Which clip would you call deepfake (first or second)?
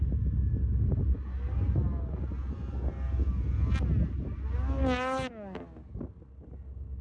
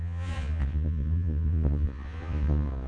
second